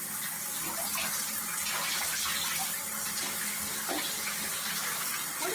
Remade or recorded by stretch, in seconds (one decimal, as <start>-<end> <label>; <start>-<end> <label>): 0.0-5.5 recorded